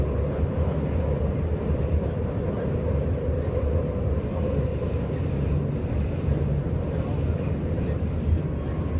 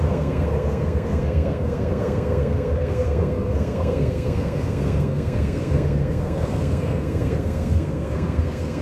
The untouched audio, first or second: first